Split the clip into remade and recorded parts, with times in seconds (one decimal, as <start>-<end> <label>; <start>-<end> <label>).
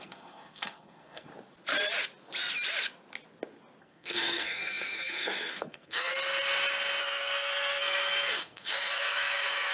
0.0-1.3 remade; 1.3-3.8 recorded; 3.8-6.1 remade; 6.1-7.0 recorded; 7.0-9.7 remade